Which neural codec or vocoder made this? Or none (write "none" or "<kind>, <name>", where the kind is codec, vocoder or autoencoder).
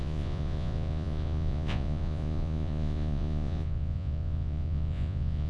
vocoder, Vocos